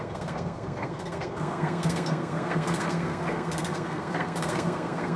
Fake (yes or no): yes